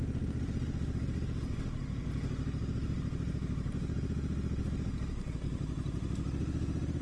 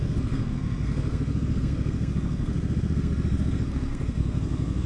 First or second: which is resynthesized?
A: second